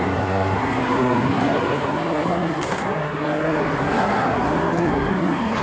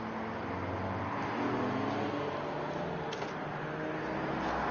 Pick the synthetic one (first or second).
first